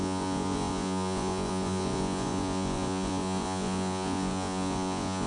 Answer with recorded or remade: remade